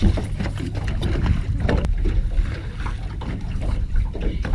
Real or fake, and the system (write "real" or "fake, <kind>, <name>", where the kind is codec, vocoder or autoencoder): real